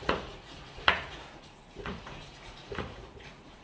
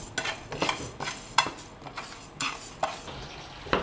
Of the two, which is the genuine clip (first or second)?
second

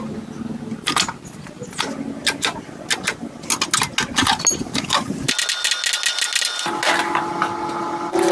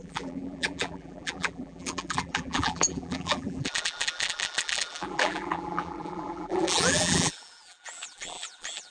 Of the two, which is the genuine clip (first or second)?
first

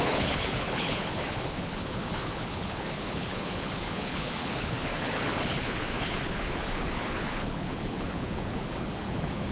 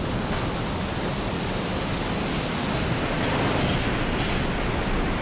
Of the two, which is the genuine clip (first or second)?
second